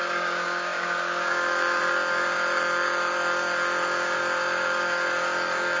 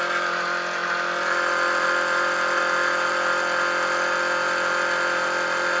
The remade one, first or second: first